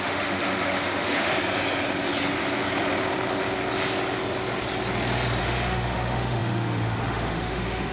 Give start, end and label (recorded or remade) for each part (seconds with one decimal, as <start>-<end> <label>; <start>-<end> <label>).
0.0-1.4 remade; 1.4-5.4 recorded; 5.4-7.9 remade